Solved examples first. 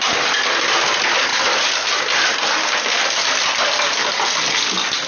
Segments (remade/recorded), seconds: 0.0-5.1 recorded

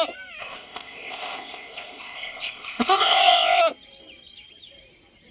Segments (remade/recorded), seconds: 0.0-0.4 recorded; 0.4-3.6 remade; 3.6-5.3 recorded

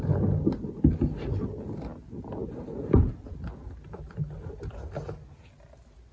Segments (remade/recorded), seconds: 0.0-6.1 recorded

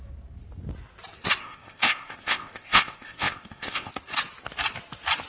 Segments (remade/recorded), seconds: 0.0-1.4 recorded; 1.4-3.9 remade; 3.9-5.3 recorded

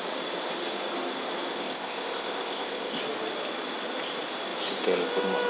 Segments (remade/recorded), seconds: 0.0-1.5 recorded; 1.5-3.0 remade; 3.0-5.5 recorded

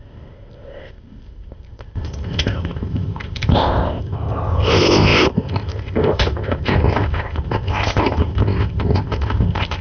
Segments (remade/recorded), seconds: 0.0-9.8 remade

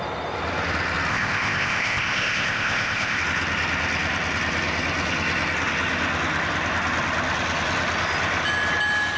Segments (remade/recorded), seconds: 0.0-1.1 recorded; 1.1-3.2 remade; 3.2-9.2 recorded

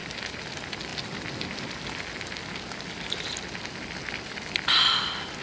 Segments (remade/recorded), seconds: 0.0-5.4 recorded